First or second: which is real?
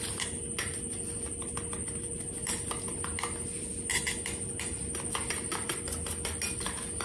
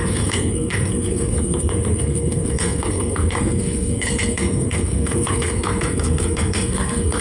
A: first